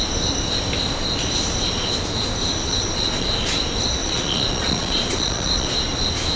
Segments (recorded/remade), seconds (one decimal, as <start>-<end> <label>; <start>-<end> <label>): 0.0-2.7 recorded; 2.7-3.6 remade; 3.6-4.0 recorded; 4.0-5.7 remade; 5.7-6.4 recorded